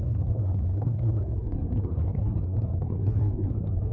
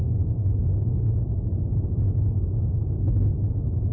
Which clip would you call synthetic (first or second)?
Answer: first